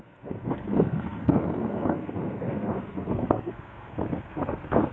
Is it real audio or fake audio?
fake